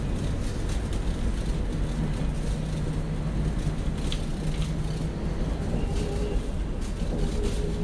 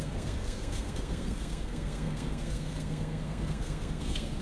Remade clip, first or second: second